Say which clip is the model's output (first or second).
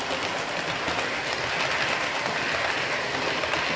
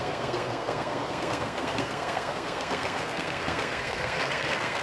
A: second